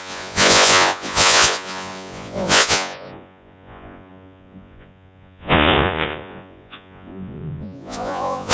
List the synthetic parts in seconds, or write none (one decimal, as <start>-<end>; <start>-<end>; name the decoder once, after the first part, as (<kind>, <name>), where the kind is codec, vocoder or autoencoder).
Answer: 0.0-8.5 (vocoder, Vocos)